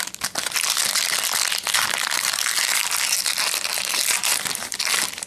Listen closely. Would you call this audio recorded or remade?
recorded